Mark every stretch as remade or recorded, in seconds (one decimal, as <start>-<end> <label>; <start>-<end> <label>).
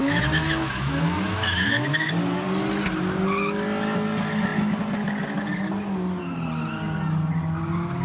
0.0-2.1 remade; 2.1-8.0 recorded